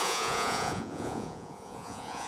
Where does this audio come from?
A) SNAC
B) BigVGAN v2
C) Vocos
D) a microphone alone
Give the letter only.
C